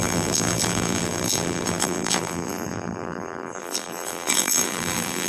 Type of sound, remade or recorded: remade